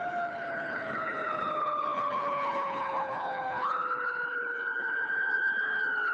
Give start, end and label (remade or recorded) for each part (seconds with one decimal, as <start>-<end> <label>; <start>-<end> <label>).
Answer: 0.0-6.1 remade